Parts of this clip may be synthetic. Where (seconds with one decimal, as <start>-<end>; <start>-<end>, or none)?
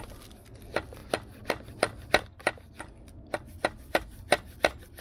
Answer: none